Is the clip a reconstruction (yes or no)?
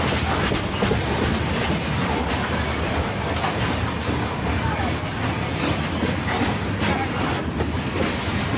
no